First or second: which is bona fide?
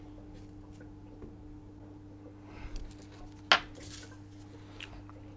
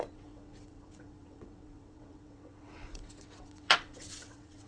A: first